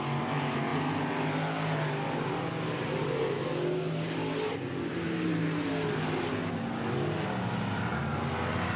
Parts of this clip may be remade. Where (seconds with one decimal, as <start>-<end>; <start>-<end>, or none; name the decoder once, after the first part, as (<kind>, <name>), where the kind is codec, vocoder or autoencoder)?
none